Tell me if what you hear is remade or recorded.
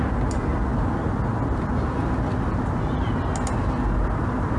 recorded